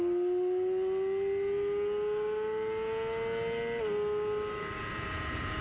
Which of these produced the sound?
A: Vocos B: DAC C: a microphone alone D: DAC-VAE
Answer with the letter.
C